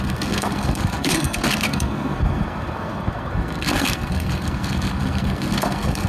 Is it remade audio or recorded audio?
remade